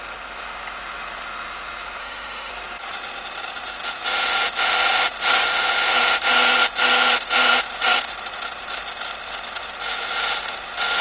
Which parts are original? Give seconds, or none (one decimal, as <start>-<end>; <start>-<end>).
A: 0.0-2.0; 2.5-11.0